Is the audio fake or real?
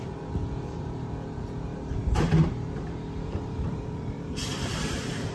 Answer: fake